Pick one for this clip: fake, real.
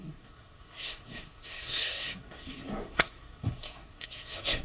fake